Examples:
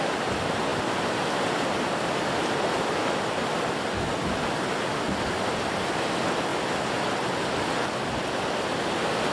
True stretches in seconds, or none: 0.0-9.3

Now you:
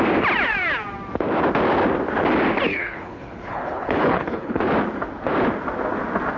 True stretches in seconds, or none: 0.0-2.7; 4.6-6.4

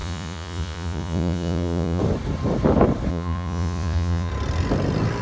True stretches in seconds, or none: 2.0-3.1; 4.3-5.2

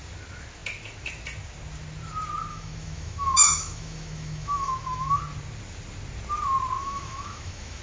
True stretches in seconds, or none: 0.0-2.5; 5.2-6.8

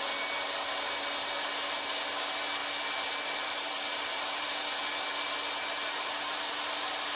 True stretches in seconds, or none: 0.0-2.6; 4.8-7.2

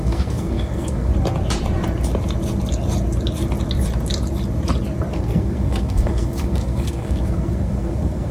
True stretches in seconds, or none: 1.1-5.1